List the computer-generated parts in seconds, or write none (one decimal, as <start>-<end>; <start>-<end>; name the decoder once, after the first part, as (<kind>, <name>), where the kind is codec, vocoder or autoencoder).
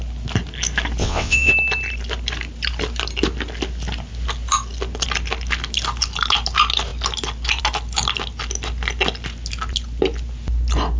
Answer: 1.0-1.5 (vocoder, WaveNeXt)